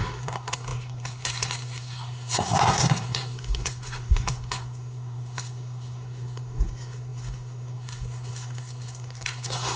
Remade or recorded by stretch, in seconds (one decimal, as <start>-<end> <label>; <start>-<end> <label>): 0.0-9.8 remade